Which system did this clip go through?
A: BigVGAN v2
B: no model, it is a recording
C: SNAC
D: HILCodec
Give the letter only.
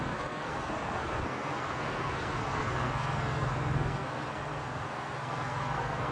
C